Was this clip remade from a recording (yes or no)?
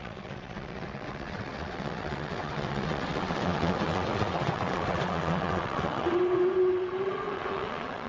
yes